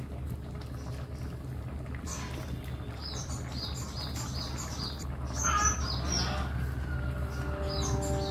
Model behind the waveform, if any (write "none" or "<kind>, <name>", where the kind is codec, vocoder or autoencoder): none